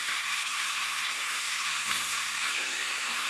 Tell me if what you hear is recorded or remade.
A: remade